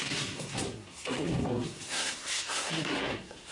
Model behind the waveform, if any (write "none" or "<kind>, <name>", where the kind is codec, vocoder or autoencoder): codec, SNAC